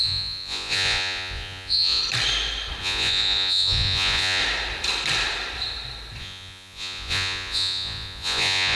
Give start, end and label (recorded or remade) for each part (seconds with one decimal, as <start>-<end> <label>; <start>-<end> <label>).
0.0-2.0 remade; 2.0-2.8 recorded; 2.8-4.4 remade; 4.4-6.2 recorded; 6.2-8.7 remade